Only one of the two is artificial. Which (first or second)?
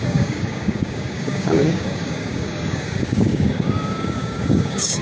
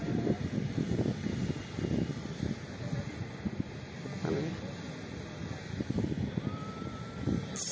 first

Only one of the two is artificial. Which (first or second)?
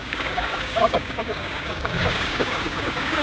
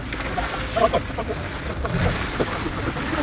first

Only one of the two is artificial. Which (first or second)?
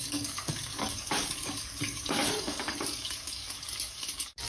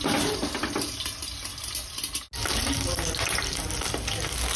first